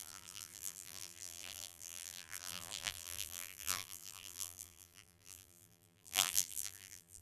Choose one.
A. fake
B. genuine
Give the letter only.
A